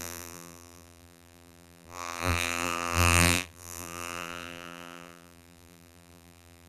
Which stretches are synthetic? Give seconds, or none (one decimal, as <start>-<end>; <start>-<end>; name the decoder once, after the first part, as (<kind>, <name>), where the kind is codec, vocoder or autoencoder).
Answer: 0.0-6.7 (vocoder, BigVGAN v2)